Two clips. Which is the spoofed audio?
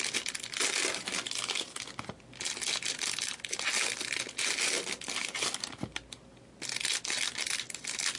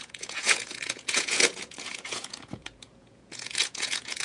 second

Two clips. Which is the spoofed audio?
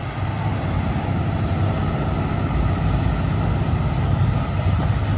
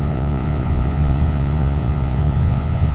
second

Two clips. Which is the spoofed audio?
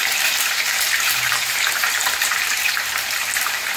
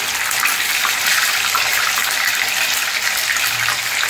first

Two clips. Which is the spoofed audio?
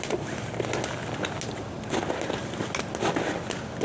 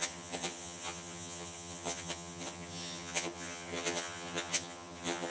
second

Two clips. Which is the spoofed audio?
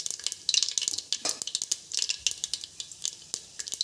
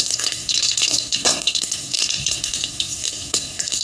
second